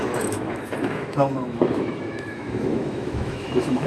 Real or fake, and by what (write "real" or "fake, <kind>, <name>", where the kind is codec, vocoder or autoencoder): fake, autoencoder, DAC-VAE